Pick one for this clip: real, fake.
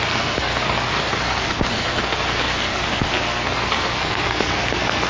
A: fake